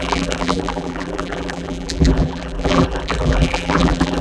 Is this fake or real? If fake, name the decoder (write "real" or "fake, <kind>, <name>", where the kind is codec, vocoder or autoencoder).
fake, vocoder, BigVGAN v2